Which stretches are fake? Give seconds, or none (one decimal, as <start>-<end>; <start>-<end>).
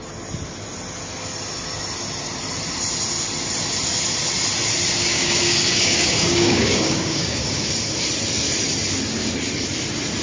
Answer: 5.1-7.7